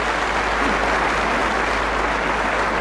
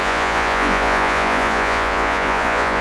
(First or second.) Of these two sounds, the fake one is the second